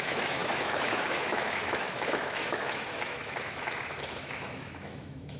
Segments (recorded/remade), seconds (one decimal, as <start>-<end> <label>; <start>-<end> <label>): 0.0-5.4 remade